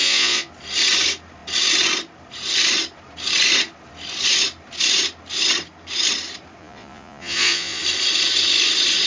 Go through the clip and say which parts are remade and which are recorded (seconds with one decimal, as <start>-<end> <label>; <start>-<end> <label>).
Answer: 0.0-0.5 remade; 0.5-6.6 recorded; 6.6-7.8 remade; 7.8-9.1 recorded